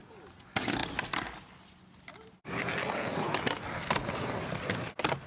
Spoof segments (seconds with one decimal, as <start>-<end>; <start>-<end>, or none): none